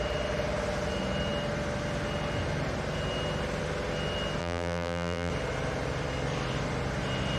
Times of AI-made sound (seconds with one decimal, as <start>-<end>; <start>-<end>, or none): 4.4-5.3